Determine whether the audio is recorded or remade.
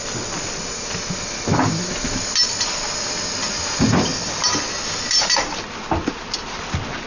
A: recorded